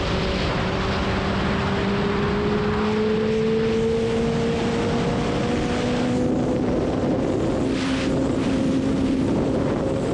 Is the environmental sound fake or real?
real